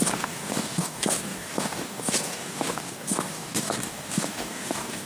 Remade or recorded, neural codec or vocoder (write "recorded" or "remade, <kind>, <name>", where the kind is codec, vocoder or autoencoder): remade, codec, DAC